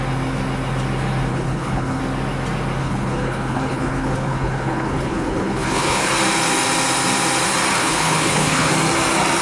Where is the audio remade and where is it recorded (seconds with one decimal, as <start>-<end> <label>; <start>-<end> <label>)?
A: 0.0-1.3 recorded; 1.3-2.0 remade; 2.0-2.8 recorded; 2.8-6.1 remade; 6.1-7.8 recorded; 7.8-8.7 remade; 8.7-9.4 recorded